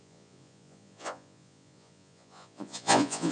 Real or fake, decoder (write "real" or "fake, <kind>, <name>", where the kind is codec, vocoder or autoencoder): fake, vocoder, Vocos